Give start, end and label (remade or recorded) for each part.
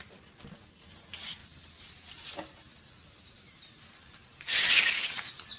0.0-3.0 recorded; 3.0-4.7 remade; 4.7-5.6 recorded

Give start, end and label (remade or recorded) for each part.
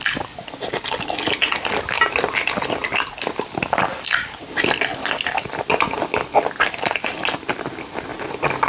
0.0-8.1 recorded; 8.1-8.7 remade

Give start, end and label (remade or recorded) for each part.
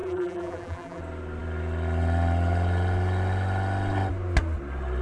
0.0-1.0 remade; 1.0-5.0 recorded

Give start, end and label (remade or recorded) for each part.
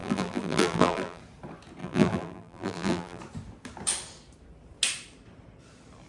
0.0-1.2 remade; 1.2-1.8 recorded; 1.8-3.2 remade; 3.2-6.1 recorded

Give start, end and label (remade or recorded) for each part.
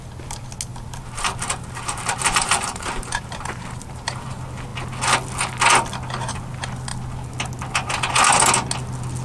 0.0-0.7 recorded; 0.7-4.3 remade; 4.3-9.2 recorded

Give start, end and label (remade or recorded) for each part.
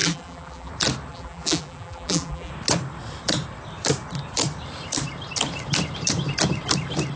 0.0-0.7 remade; 0.7-1.1 recorded; 1.1-2.5 remade; 2.5-7.2 recorded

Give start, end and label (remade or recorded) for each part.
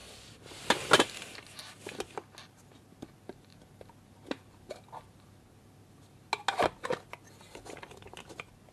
0.0-8.7 recorded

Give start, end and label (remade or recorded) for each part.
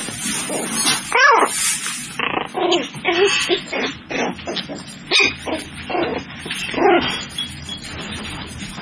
0.0-8.8 recorded